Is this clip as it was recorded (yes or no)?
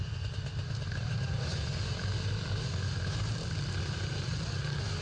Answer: yes